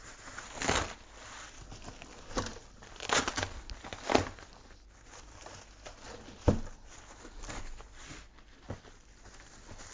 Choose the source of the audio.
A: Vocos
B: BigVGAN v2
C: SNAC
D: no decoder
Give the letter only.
D